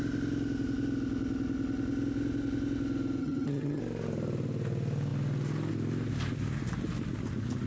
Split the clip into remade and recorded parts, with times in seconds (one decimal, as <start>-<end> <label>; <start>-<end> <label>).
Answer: 0.0-3.2 recorded; 3.2-3.8 remade; 3.8-7.7 recorded